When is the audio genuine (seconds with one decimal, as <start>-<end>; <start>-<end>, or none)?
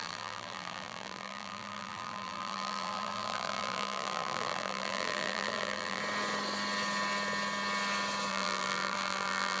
6.0-8.3